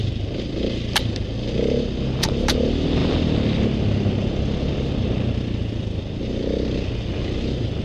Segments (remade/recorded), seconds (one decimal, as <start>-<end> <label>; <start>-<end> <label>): 0.0-7.8 recorded